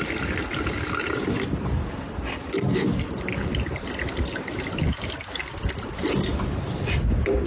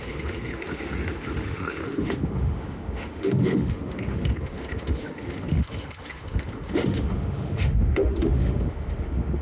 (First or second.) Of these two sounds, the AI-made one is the second